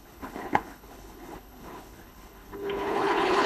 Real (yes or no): no